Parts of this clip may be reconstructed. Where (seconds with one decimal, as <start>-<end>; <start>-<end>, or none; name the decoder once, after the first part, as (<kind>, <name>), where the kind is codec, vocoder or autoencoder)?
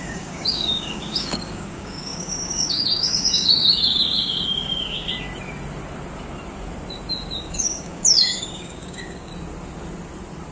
0.0-5.1 (codec, DAC); 7.4-9.3